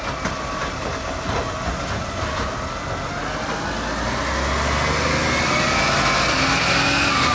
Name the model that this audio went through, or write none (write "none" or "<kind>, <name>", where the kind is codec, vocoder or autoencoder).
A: none